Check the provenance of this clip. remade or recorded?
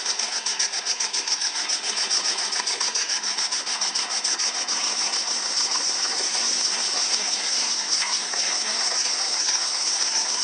remade